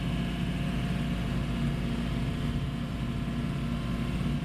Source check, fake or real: real